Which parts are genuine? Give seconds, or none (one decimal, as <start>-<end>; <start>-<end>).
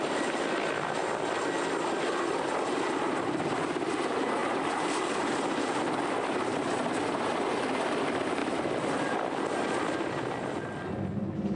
0.0-4.4; 7.5-8.4; 9.4-11.6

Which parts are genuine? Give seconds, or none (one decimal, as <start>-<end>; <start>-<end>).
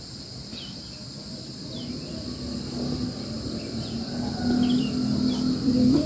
1.0-4.7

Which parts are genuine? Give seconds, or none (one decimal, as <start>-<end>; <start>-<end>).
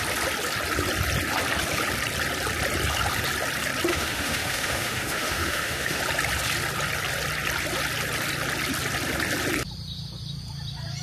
0.0-3.9; 6.0-11.0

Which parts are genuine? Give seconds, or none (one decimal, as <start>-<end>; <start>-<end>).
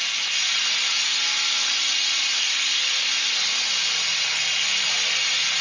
0.0-5.6